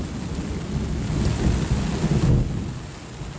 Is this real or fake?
real